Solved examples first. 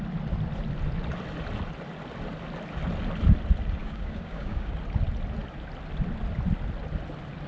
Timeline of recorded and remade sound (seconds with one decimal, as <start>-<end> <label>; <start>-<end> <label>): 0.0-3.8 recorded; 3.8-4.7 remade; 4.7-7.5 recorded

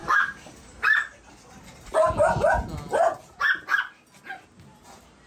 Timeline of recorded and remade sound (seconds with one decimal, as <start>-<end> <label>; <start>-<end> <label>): 0.0-0.7 remade; 0.7-5.3 recorded

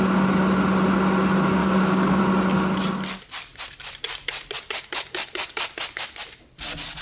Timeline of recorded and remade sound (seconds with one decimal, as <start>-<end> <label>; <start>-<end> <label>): 0.0-1.6 recorded; 1.6-2.2 remade; 2.2-7.0 recorded